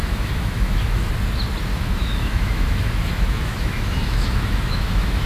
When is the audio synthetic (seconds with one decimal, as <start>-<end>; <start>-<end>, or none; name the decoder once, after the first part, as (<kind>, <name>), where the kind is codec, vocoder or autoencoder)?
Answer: 0.0-1.1 (autoencoder, DAC-VAE); 1.7-5.3